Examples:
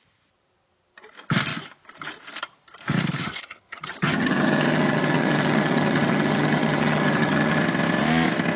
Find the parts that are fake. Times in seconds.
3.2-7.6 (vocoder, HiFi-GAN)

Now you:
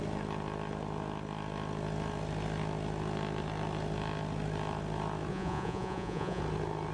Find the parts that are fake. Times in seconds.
5.3-6.4 (vocoder, Vocos)

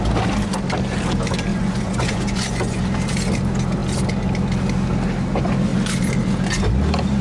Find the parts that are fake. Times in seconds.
1.5-2.8 (vocoder, Vocos)

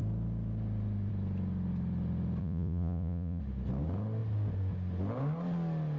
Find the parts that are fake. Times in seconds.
2.4-3.4 (vocoder, Vocos)

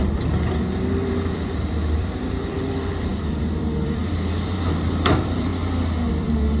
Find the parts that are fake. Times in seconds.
0.0-5.5 (vocoder, BigVGAN v2); 6.1-6.6